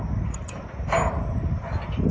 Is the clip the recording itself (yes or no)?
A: yes